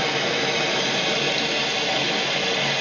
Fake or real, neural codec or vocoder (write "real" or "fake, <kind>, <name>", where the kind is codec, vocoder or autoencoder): real